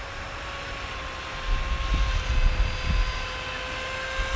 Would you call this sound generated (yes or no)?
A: no